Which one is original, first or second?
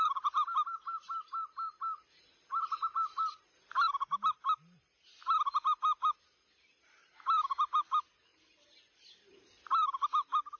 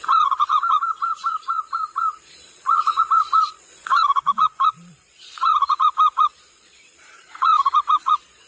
first